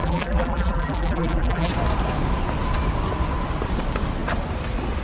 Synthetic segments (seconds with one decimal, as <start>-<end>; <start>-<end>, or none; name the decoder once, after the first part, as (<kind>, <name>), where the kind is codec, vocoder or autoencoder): 0.0-1.7 (vocoder, BigVGAN v2)